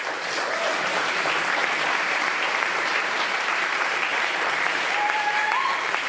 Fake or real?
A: fake